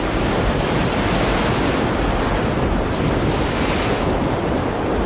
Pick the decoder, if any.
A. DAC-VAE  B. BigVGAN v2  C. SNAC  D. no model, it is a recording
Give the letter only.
D